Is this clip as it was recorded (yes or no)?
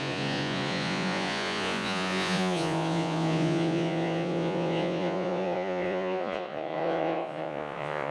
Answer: no